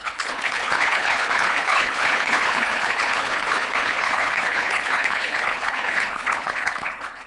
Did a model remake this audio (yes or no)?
yes